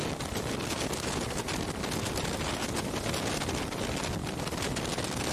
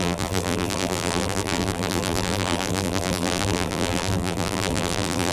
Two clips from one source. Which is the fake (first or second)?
second